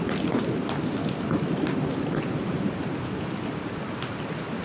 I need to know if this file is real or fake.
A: real